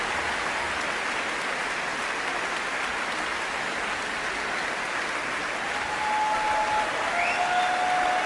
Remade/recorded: recorded